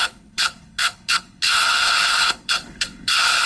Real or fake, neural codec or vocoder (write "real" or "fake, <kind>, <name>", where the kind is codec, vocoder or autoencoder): fake, codec, HILCodec